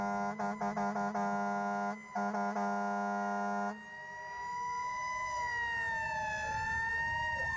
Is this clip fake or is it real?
real